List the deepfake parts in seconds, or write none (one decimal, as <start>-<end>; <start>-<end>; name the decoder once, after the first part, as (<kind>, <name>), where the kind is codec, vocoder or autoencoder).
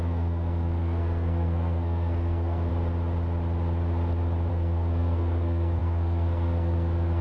0.0-2.7 (codec, SNAC); 4.5-7.2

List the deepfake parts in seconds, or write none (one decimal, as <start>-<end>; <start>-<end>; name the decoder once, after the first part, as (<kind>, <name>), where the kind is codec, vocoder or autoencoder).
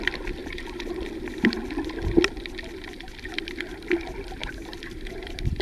0.4-1.6 (vocoder, BigVGAN v2); 4.4-5.6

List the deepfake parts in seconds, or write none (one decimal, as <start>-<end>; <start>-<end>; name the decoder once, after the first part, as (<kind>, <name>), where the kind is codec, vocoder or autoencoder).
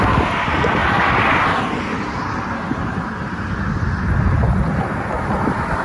none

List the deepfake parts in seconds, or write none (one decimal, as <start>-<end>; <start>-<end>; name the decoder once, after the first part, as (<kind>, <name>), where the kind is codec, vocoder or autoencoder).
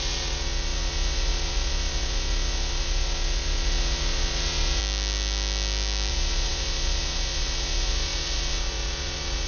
0.0-4.8 (vocoder, Vocos); 6.1-9.5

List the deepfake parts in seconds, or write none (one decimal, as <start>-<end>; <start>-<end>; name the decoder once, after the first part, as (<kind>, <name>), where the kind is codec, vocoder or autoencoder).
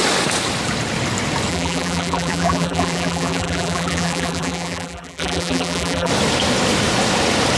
1.5-6.1 (vocoder, BigVGAN v2)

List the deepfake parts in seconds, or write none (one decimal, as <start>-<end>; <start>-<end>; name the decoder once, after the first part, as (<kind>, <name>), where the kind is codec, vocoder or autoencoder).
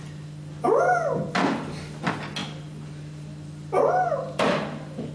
2.4-5.1 (vocoder, BigVGAN v2)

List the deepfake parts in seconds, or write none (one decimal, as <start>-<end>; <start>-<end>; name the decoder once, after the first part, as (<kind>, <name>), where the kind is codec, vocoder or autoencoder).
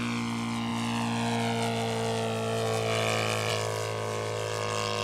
none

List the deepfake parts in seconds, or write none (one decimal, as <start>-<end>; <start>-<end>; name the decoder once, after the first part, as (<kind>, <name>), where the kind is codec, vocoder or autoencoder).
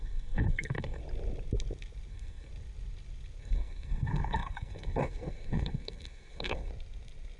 0.0-1.0 (codec, SNAC); 2.1-2.5; 3.4-6.7